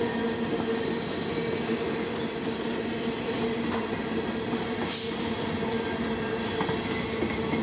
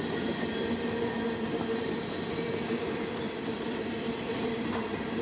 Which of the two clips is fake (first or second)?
second